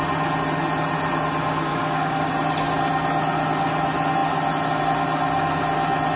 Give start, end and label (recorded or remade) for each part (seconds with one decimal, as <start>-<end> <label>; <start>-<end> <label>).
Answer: 0.0-1.7 recorded; 1.7-2.3 remade; 2.3-6.2 recorded